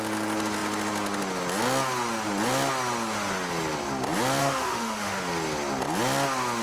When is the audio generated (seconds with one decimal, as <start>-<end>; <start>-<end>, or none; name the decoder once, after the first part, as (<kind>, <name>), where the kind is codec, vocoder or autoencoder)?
4.4-5.2 (autoencoder, DAC-VAE)